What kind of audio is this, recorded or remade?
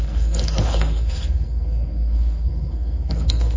remade